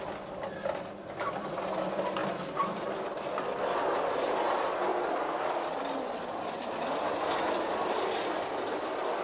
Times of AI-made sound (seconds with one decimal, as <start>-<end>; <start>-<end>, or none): none